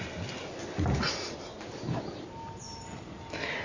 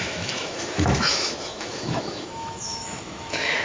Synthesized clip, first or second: second